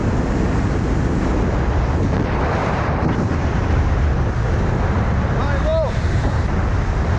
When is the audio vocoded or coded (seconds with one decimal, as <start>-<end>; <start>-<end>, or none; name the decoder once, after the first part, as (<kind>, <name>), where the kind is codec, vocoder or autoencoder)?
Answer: 2.6-4.1 (vocoder, BigVGAN v2); 5.7-6.5